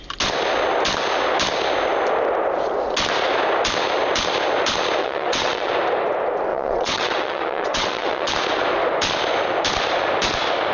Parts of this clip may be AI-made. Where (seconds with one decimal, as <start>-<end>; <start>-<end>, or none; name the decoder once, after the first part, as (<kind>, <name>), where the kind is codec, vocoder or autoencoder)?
5.0-5.7 (vocoder, WaveNeXt); 6.5-8.3